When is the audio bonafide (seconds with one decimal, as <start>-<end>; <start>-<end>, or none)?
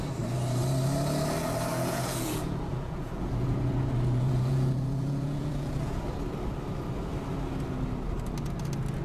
0.0-1.7; 6.0-9.0